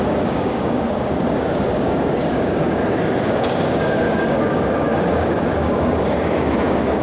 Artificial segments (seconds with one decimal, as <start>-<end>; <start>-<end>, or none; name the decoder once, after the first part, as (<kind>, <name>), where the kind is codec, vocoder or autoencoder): 0.0-2.8 (codec, DAC); 3.3-7.0